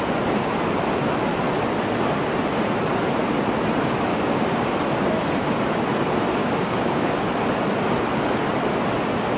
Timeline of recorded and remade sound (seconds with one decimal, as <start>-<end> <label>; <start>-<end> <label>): 0.0-4.1 recorded; 4.1-4.7 remade; 4.7-6.4 recorded; 6.4-7.1 remade; 7.1-9.4 recorded